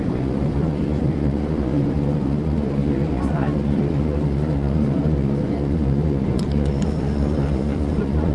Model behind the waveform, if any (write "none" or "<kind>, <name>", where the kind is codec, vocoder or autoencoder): vocoder, Vocos